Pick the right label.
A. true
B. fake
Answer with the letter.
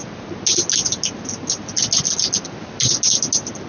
A